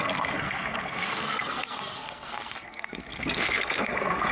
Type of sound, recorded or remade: remade